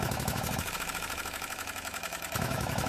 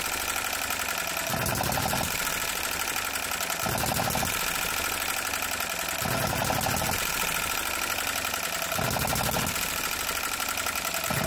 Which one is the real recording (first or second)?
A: second